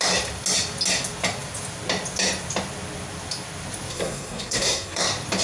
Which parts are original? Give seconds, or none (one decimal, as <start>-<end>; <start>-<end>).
0.0-3.9; 5.0-5.4